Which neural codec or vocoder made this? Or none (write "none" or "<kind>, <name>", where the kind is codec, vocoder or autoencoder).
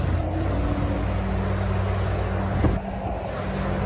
none